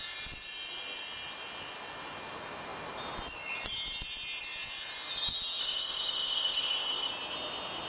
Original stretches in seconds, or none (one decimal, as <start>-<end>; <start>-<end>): 0.0-5.6; 7.1-7.9

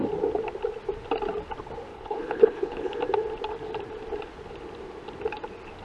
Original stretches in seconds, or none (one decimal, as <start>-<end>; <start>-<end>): 0.0-1.9; 3.0-5.8

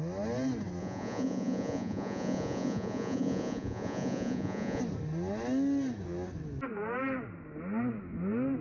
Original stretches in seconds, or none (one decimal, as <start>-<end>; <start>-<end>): 0.0-0.8; 4.8-8.6

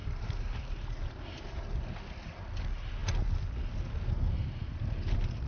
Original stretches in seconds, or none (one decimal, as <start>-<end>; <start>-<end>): 0.0-5.5

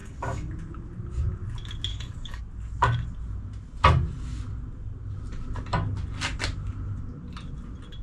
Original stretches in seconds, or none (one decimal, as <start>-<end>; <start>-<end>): 0.5-1.9; 2.4-8.0